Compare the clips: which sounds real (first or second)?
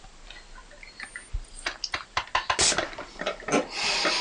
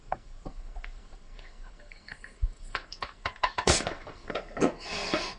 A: first